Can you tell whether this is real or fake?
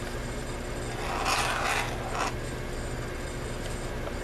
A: real